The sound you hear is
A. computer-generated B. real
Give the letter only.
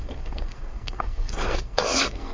A